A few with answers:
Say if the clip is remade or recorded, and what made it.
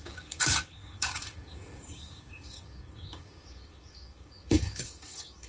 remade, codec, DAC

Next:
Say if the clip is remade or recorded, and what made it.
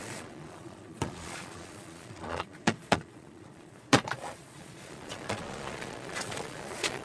remade, vocoder, Vocos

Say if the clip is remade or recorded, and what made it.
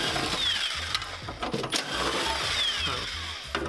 recorded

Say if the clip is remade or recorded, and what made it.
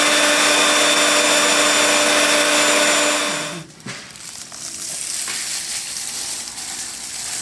recorded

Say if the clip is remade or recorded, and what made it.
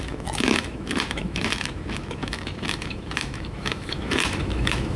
remade, autoencoder, DAC-VAE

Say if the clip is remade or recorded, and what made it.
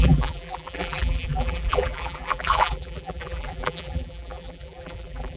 remade, vocoder, BigVGAN v2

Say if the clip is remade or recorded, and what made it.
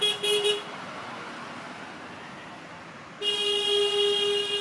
recorded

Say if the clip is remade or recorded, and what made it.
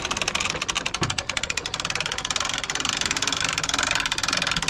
recorded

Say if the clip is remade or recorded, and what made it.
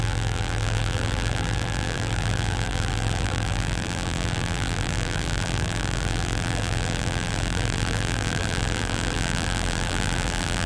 remade, vocoder, BigVGAN v2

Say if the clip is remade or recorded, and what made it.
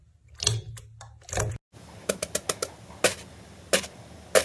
recorded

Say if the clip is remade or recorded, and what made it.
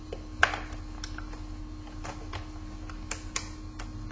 recorded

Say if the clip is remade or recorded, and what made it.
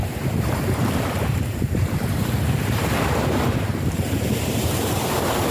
remade, vocoder, BigVGAN v2